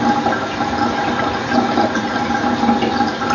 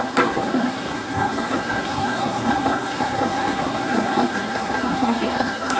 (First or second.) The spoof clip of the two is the second